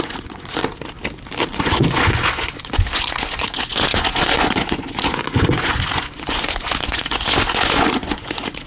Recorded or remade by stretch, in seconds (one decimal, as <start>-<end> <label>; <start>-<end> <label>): 0.0-0.6 remade; 0.6-1.6 recorded; 1.6-8.7 remade